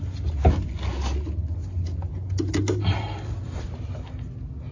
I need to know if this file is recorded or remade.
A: recorded